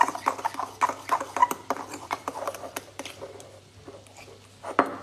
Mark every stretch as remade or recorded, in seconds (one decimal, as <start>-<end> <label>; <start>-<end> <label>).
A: 0.0-1.4 recorded; 1.4-3.6 remade; 3.6-5.0 recorded